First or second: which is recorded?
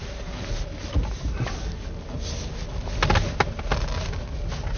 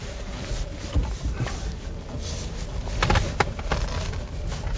first